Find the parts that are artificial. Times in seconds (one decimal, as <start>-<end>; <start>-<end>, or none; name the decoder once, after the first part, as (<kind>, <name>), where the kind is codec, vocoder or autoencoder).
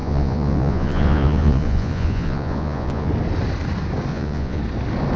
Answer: 0.0-3.1 (vocoder, Vocos); 4.1-4.6